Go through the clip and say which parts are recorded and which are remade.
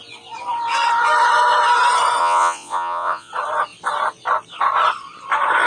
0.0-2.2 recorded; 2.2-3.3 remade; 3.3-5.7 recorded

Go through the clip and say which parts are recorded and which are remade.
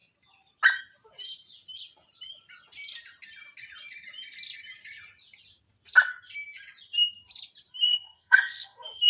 0.0-7.9 recorded; 7.9-9.1 remade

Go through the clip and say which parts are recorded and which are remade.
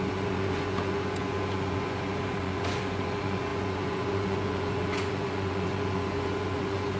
0.0-7.0 remade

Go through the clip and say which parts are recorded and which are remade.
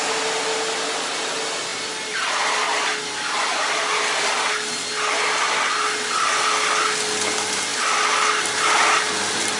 0.0-9.6 recorded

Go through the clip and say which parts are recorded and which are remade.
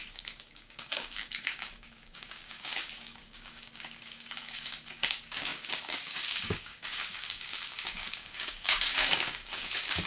0.0-10.1 remade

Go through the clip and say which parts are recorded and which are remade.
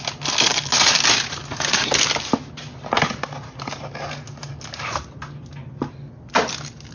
0.0-6.9 recorded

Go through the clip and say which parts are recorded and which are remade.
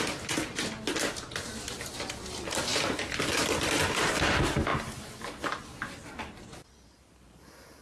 0.0-2.7 remade; 2.7-4.2 recorded; 4.2-4.7 remade; 4.7-5.6 recorded; 5.6-7.8 remade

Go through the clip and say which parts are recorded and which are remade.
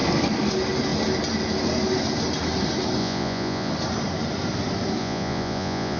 0.0-3.0 recorded; 3.0-3.7 remade; 3.7-5.0 recorded; 5.0-6.0 remade